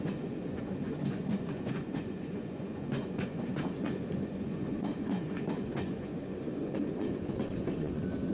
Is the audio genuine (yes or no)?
no